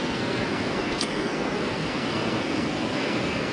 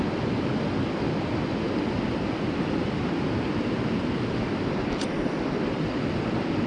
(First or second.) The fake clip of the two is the first